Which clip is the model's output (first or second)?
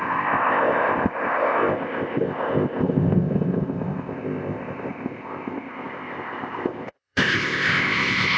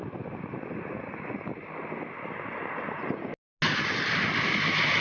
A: first